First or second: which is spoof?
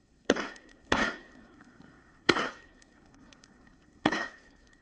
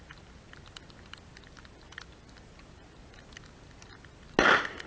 first